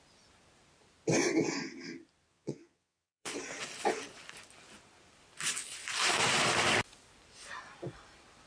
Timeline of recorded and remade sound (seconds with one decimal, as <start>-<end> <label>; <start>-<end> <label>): 0.0-2.3 recorded; 2.3-3.3 remade; 3.3-8.5 recorded

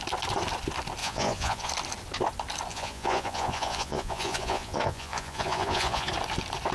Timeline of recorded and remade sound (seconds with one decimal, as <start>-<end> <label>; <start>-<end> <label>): 0.0-1.0 recorded; 1.0-1.7 remade; 1.7-2.7 recorded; 2.7-6.1 remade; 6.1-6.7 recorded

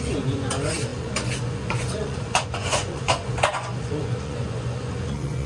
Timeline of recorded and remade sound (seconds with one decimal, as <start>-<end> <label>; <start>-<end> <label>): 0.0-5.5 remade

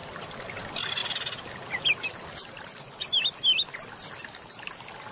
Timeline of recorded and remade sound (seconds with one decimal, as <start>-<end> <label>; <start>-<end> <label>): 0.0-5.1 recorded

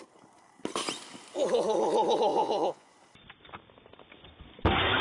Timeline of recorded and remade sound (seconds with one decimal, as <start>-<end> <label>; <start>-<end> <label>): 0.0-2.3 recorded; 2.3-2.9 remade; 2.9-5.0 recorded

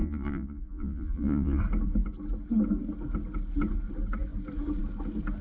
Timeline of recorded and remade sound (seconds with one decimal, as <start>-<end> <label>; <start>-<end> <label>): 0.0-1.6 remade; 1.6-5.4 recorded